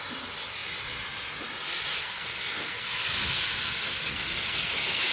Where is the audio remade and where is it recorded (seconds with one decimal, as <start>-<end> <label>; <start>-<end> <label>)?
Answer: 0.0-1.9 recorded; 1.9-5.1 remade